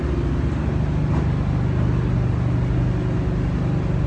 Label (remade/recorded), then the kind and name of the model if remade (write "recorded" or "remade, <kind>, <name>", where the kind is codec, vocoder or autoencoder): recorded